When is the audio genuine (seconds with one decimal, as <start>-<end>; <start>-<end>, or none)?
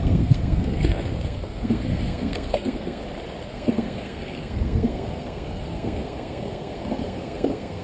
3.0-3.5